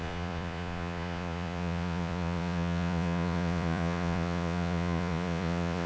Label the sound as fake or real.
fake